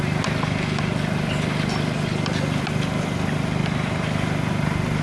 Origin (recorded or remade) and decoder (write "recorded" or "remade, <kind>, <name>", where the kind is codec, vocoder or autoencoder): recorded